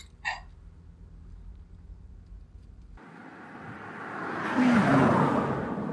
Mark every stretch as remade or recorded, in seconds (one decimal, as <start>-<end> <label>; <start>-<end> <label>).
0.0-3.2 recorded; 3.2-4.4 remade; 4.4-5.9 recorded